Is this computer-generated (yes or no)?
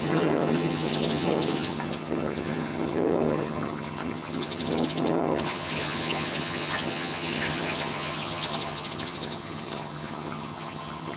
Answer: yes